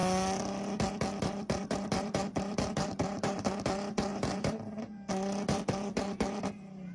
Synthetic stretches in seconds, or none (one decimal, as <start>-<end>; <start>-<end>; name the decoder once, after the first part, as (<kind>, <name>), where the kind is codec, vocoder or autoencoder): 1.2-6.9 (vocoder, BigVGAN v2)